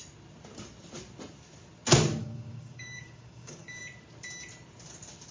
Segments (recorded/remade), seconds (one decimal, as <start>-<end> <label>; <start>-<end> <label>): 0.0-2.2 recorded; 2.2-3.8 remade; 3.8-5.3 recorded